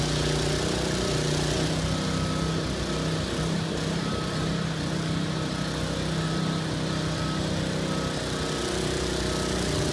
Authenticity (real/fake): real